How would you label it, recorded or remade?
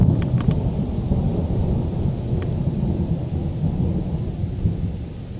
recorded